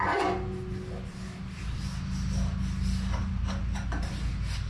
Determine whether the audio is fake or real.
real